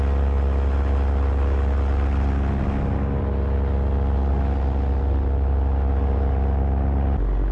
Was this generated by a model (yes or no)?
no